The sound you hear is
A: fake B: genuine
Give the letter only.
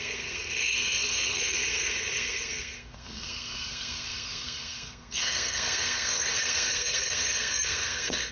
A